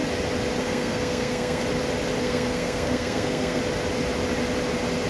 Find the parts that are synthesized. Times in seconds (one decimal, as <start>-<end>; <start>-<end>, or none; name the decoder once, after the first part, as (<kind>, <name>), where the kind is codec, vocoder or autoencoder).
0.6-1.6 (codec, SNAC); 2.2-3.6

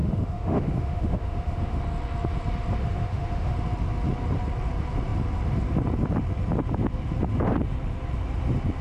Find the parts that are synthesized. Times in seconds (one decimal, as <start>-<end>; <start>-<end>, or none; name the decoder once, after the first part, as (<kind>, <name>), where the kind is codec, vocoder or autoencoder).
0.0-1.8 (autoencoder, DAC-VAE); 2.8-3.5

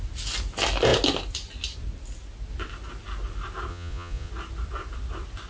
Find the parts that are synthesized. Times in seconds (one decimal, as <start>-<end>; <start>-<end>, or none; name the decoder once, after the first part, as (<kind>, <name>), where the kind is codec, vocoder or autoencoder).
3.7-4.3 (vocoder, Vocos)